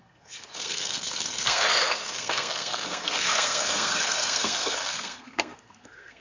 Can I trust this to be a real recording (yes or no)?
no